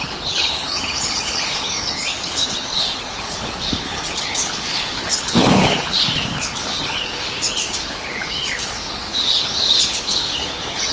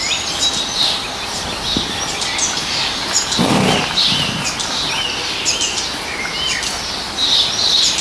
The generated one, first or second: first